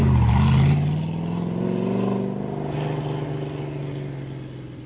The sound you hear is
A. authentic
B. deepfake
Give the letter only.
A